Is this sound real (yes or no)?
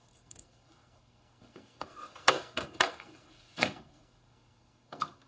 no